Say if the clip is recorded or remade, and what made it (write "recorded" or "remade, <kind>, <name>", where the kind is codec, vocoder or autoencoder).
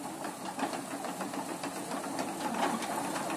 recorded